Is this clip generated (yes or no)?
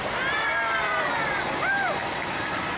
yes